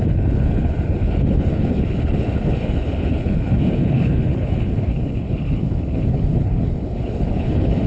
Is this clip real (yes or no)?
no